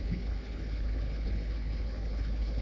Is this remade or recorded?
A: remade